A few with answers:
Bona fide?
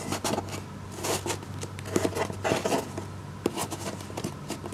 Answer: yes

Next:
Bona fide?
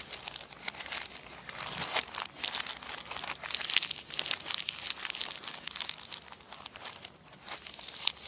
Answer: yes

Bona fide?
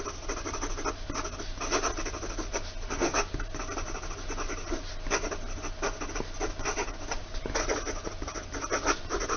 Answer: yes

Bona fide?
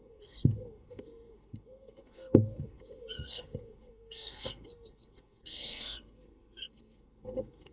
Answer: no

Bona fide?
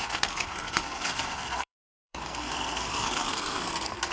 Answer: no